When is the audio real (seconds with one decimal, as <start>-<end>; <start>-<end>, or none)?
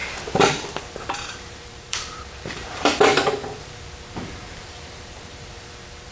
0.0-0.9; 3.1-3.6